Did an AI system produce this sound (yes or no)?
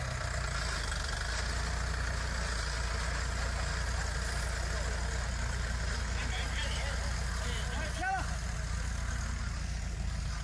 no